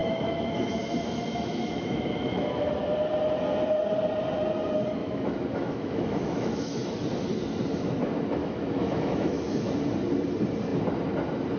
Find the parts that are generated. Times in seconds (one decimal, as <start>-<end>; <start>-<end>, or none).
0.0-2.7; 5.0-6.9; 8.4-9.7